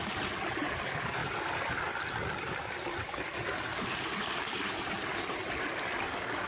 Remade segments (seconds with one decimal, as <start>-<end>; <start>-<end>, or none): none